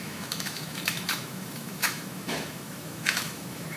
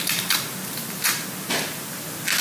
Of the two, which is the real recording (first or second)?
second